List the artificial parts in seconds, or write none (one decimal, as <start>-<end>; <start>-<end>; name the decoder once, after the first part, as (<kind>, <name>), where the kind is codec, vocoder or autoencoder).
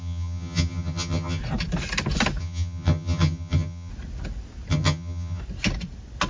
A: 0.0-1.4 (vocoder, HiFi-GAN); 2.4-3.9; 4.7-5.4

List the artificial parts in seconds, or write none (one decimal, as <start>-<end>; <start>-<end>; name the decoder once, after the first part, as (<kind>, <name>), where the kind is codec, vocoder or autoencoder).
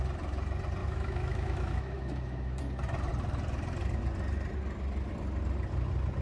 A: 0.8-2.6 (autoencoder, DAC-VAE)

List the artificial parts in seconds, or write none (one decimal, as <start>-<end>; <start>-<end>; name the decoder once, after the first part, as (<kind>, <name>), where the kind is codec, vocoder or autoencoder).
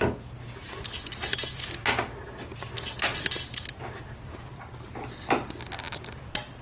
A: none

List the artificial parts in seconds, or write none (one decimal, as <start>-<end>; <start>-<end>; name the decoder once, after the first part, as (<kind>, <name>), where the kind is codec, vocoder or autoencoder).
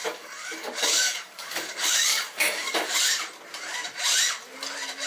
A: 0.0-3.1 (codec, DAC)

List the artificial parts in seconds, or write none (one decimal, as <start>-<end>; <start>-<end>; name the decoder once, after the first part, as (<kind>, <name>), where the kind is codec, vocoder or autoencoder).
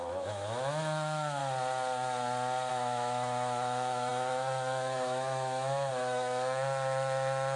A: 0.0-1.4 (autoencoder, DAC-VAE); 2.7-7.6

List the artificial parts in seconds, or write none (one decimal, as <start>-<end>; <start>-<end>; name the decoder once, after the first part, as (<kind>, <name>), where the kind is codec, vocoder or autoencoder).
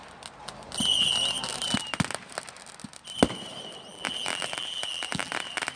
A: 3.9-5.3 (vocoder, BigVGAN v2)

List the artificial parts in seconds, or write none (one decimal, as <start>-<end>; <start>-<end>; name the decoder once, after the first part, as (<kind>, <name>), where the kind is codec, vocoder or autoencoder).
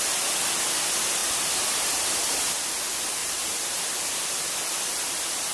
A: 1.2-2.6 (vocoder, BigVGAN v2); 3.2-4.5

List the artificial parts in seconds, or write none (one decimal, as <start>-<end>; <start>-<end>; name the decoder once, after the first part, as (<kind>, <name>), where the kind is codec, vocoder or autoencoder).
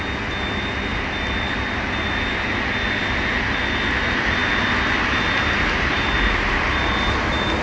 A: none